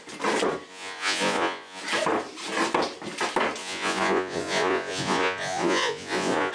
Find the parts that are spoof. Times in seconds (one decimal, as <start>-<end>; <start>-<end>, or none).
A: 0.7-1.8; 3.6-6.5